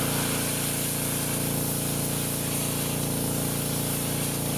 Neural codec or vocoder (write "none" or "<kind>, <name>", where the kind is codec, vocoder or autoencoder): none